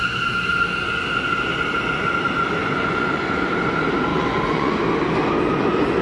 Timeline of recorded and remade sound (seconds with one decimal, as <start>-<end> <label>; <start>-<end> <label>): 0.0-2.6 recorded; 2.6-3.5 remade; 3.5-4.1 recorded; 4.1-4.8 remade; 4.8-6.0 recorded

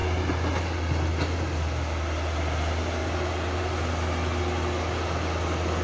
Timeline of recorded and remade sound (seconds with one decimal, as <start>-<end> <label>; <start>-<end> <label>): 0.0-5.8 recorded

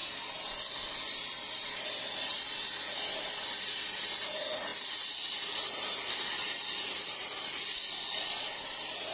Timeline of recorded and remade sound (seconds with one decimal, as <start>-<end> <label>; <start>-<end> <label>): 0.0-9.1 recorded

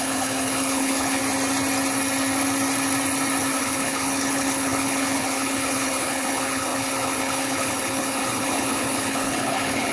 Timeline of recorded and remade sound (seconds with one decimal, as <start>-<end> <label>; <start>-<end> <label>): 0.0-1.2 remade; 1.2-3.6 recorded; 3.6-9.9 remade